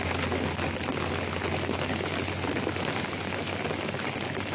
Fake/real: real